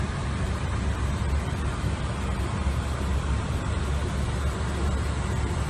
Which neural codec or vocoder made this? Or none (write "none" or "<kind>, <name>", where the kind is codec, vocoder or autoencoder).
none